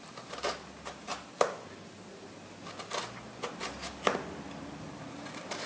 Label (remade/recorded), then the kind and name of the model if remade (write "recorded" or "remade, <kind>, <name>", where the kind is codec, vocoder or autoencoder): recorded